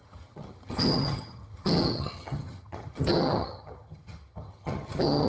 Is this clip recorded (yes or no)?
no